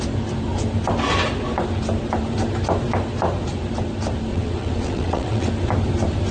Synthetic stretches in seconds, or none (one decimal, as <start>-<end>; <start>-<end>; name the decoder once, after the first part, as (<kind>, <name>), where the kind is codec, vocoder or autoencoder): 4.3-5.5 (vocoder, WaveNeXt)